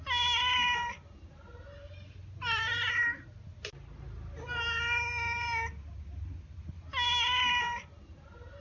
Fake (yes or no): no